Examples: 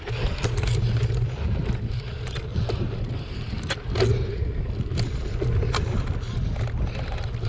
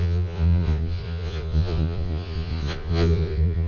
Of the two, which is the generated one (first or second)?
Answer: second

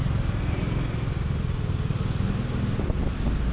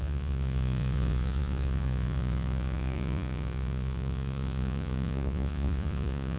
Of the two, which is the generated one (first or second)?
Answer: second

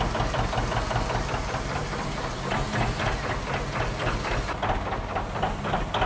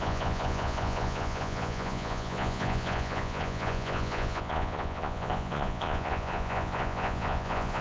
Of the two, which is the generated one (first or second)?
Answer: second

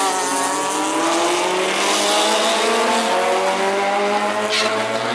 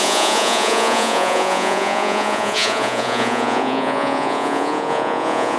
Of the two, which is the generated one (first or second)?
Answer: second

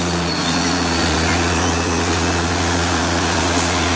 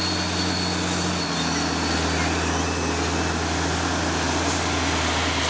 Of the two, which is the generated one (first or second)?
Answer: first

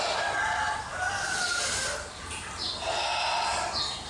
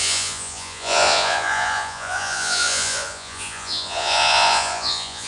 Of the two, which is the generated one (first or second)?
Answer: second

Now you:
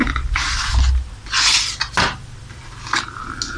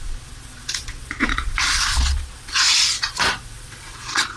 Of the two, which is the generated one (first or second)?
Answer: second